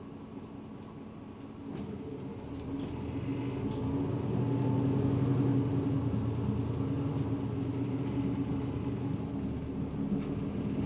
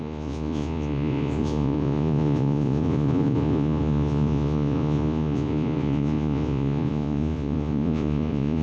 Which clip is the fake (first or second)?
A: second